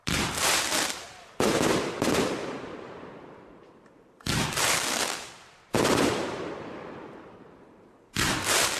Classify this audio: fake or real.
fake